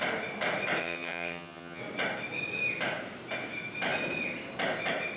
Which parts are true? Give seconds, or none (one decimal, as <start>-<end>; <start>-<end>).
0.0-0.8; 1.8-5.2